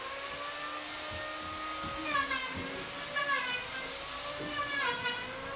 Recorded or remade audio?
recorded